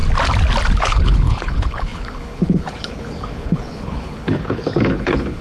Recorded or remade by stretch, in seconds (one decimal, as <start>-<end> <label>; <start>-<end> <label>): 0.0-0.8 recorded; 0.8-5.4 remade